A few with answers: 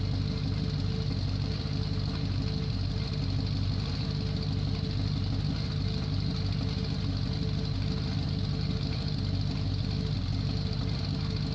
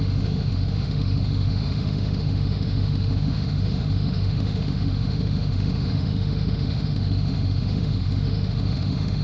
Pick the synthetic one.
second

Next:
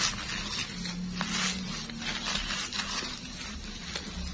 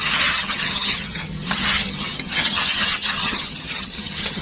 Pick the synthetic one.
second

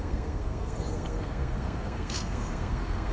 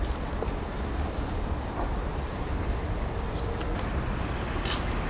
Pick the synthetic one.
first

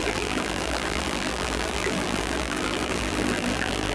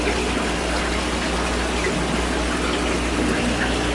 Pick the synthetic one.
first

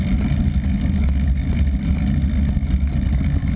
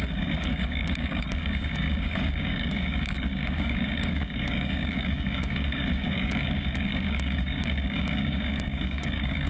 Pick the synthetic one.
second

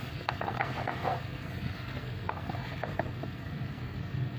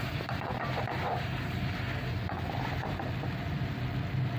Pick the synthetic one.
first